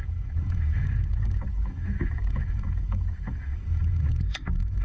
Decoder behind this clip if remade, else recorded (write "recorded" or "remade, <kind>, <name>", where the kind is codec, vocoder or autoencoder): remade, autoencoder, DAC-VAE